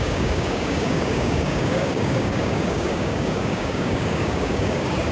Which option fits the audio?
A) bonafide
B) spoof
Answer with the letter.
B